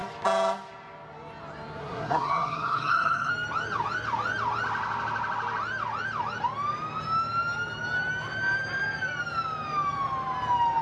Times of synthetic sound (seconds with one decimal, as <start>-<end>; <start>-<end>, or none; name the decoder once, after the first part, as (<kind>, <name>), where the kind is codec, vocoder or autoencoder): 1.8-3.3 (codec, SNAC)